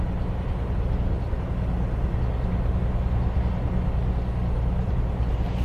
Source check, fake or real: real